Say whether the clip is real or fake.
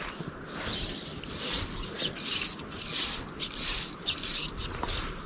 real